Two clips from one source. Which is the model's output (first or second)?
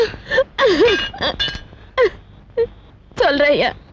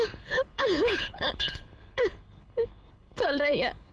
second